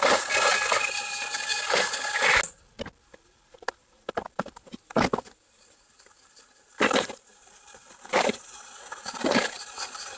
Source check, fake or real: real